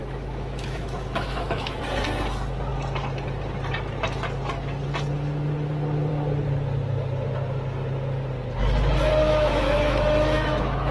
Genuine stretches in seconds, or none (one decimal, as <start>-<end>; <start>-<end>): 1.8-9.2